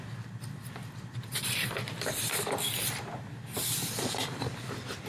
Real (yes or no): no